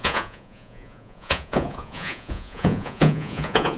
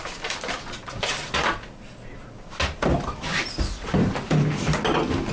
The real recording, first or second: second